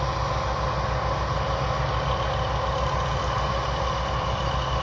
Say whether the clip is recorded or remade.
recorded